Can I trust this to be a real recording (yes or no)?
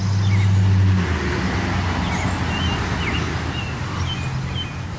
yes